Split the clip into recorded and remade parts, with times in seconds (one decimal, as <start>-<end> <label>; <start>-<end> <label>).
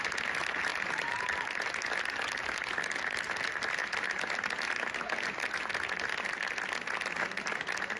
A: 0.0-8.0 recorded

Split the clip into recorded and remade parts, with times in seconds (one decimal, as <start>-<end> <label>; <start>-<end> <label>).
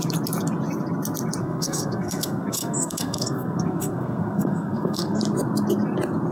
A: 0.0-1.4 recorded; 1.4-5.2 remade; 5.2-6.3 recorded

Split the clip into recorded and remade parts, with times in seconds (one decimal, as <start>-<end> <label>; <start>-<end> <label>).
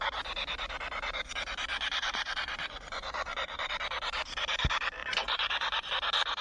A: 0.0-1.7 recorded; 1.7-3.7 remade; 3.7-5.0 recorded; 5.0-5.9 remade; 5.9-6.4 recorded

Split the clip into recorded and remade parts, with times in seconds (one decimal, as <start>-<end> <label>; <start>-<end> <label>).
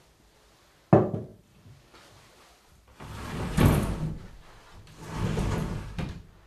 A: 0.0-6.5 recorded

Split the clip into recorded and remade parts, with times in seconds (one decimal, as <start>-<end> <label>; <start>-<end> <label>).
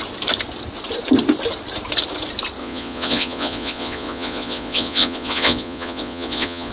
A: 0.0-2.6 recorded; 2.6-6.7 remade